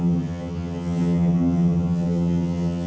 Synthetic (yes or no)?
yes